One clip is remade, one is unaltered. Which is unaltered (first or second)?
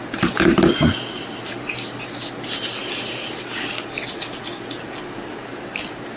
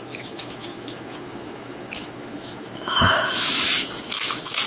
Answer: first